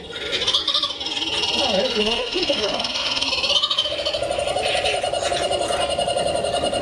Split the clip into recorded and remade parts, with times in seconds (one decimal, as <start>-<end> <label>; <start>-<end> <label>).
0.0-2.0 recorded; 2.0-3.3 remade; 3.3-6.8 recorded